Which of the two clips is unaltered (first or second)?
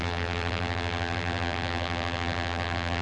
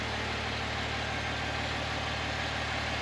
second